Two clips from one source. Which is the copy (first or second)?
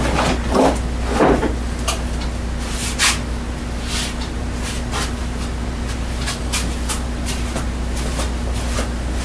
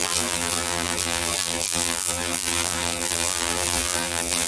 second